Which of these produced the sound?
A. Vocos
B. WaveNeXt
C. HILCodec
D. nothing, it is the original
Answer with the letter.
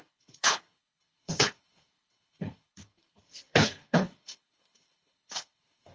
C